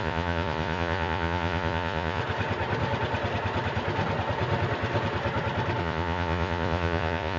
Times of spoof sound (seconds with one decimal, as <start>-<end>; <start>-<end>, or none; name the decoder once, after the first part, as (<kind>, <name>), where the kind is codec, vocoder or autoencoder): 0.0-2.2 (vocoder, Vocos); 5.8-7.4